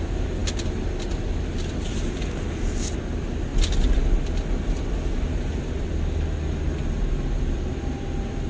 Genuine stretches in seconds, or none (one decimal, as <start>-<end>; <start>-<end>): 0.0-8.5

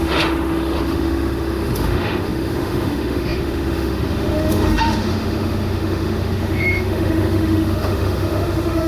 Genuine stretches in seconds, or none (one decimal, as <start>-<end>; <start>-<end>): none

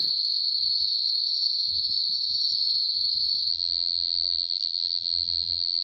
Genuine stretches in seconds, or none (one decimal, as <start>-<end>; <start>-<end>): 0.0-3.5